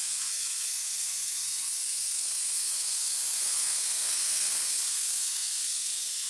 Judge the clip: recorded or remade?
remade